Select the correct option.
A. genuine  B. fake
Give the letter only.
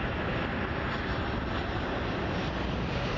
A